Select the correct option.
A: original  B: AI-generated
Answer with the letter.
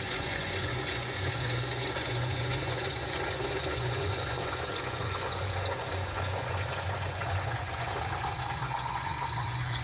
B